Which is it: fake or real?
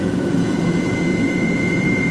fake